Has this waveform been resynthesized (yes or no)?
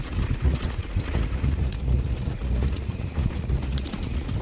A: yes